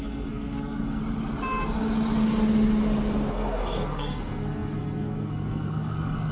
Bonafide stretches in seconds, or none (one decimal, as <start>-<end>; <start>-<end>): 1.0-3.3